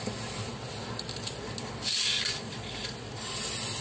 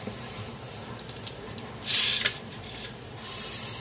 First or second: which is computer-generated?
second